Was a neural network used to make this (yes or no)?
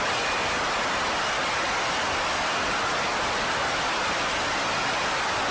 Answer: no